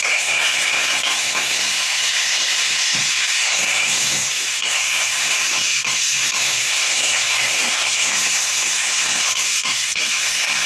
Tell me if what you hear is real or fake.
fake